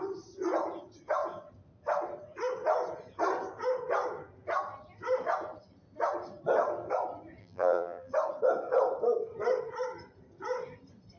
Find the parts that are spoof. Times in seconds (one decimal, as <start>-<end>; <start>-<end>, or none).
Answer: 7.4-8.1